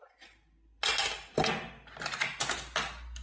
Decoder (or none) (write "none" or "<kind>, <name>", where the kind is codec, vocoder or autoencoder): none